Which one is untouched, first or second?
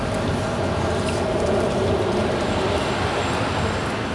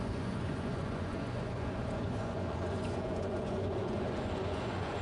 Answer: first